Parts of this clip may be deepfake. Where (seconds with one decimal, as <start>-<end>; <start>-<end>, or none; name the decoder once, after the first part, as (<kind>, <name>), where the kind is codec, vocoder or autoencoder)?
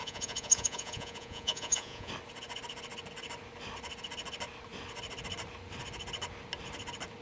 0.0-2.1 (vocoder, Vocos)